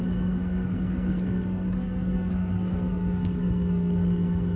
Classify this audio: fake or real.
fake